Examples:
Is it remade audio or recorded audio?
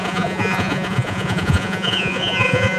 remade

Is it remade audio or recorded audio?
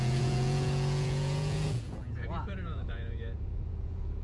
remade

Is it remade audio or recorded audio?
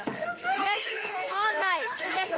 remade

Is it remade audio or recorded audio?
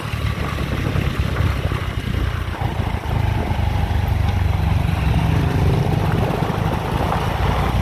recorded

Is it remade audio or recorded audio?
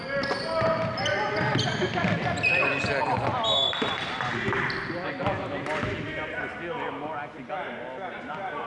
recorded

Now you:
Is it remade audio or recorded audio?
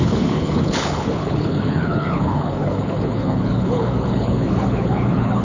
remade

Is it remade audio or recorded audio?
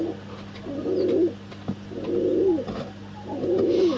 recorded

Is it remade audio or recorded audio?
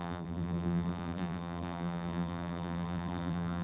remade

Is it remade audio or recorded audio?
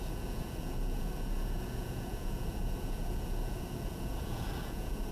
remade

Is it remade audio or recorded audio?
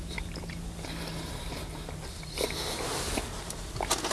recorded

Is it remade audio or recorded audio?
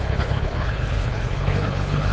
remade